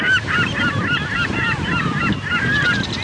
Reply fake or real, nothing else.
fake